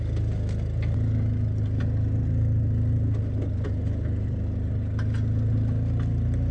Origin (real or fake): real